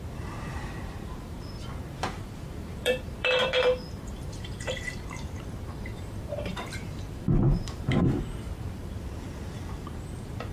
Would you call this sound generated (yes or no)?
yes